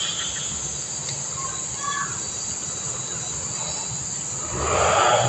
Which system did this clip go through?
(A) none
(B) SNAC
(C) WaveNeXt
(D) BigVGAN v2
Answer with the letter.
A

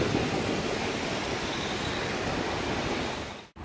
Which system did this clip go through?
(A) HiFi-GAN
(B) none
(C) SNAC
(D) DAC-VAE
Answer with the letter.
B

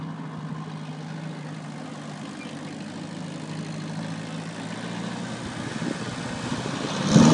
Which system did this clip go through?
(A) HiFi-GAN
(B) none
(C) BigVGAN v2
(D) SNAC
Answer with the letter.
B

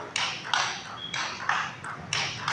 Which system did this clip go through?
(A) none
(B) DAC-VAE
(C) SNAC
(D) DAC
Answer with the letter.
A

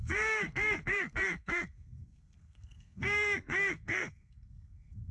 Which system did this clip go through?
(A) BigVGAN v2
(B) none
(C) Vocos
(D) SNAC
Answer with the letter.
D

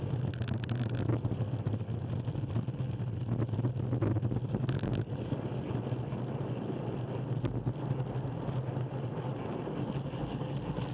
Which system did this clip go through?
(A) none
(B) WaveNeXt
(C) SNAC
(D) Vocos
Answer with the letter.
A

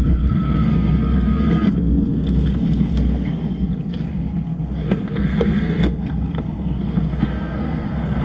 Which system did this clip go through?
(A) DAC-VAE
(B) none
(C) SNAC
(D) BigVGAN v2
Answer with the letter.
C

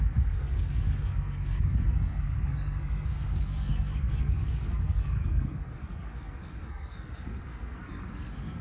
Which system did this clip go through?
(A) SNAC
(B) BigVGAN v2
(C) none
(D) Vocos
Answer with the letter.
A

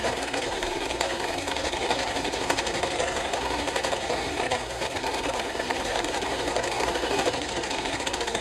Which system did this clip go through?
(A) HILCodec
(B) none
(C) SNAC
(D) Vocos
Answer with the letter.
C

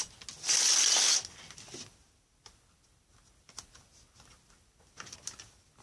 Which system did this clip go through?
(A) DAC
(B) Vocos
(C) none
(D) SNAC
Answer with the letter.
C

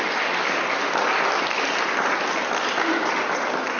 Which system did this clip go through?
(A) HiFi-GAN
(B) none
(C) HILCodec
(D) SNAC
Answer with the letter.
B